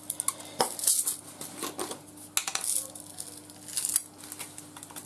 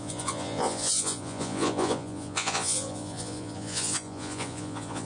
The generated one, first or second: second